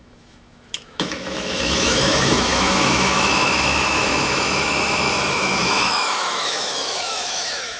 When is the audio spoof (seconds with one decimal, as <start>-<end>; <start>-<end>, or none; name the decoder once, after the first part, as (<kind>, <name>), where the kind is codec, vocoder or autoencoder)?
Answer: 0.0-7.8 (autoencoder, DAC-VAE)